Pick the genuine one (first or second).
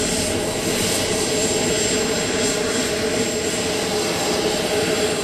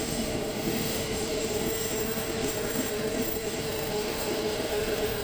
first